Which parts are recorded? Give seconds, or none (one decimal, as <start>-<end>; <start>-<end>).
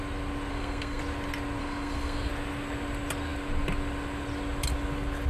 0.0-0.5; 1.0-1.6; 2.3-5.3